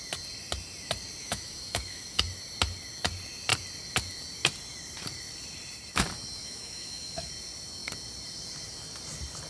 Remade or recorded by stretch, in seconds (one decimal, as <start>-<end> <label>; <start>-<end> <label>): 0.0-1.2 recorded; 1.2-2.2 remade; 2.2-6.4 recorded; 6.4-7.3 remade; 7.3-9.5 recorded